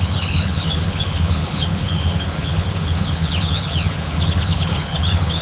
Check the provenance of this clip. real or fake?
fake